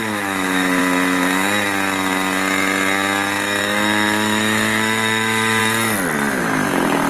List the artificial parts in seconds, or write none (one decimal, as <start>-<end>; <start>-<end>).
0.0-0.8; 3.6-5.6; 6.4-7.1